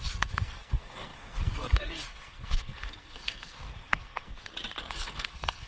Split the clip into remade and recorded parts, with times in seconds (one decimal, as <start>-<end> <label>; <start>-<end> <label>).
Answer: 0.0-4.3 remade; 4.3-4.8 recorded; 4.8-5.7 remade